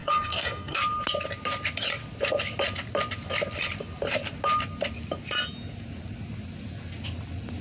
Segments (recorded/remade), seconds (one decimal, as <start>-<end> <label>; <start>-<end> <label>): 0.0-0.8 remade; 0.8-7.6 recorded